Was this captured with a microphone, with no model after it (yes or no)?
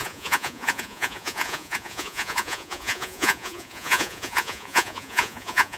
no